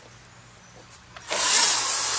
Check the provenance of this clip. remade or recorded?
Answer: recorded